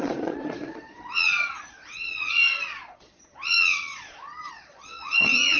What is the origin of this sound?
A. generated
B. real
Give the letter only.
A